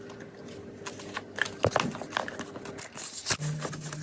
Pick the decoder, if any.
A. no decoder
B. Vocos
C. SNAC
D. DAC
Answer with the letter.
A